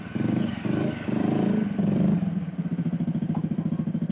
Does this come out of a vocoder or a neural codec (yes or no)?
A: yes